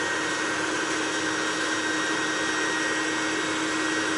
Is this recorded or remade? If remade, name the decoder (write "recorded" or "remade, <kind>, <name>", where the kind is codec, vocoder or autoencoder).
recorded